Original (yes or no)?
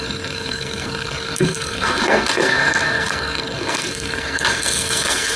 no